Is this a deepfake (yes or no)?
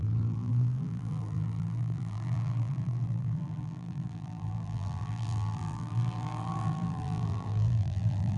yes